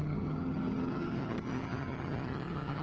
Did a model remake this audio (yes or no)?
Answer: yes